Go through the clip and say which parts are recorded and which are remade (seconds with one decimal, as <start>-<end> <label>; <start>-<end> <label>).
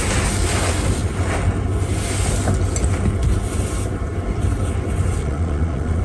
0.0-5.2 recorded; 5.2-6.0 remade